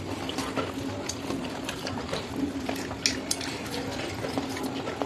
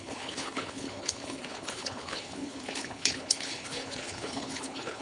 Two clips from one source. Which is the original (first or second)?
first